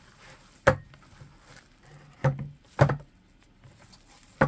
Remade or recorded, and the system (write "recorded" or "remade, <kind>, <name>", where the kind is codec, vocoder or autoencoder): recorded